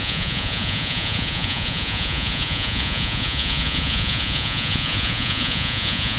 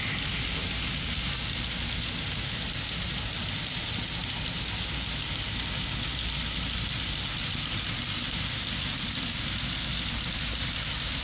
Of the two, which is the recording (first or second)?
second